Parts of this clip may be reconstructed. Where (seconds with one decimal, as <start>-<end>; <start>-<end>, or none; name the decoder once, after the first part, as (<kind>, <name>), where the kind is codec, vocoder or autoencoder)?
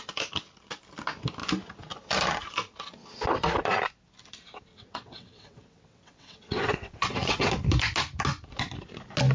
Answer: 4.7-7.5 (vocoder, WaveNeXt)